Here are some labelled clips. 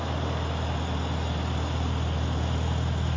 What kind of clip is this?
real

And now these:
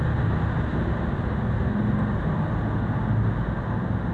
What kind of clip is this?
real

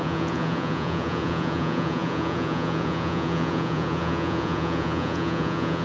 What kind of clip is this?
fake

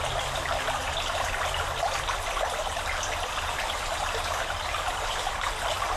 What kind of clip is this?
real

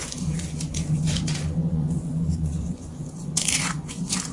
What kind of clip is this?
fake